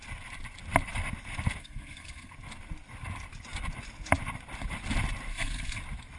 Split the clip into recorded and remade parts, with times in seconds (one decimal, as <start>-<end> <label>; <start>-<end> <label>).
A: 0.0-1.6 recorded; 1.6-2.3 remade; 2.3-5.3 recorded; 5.3-5.8 remade; 5.8-6.2 recorded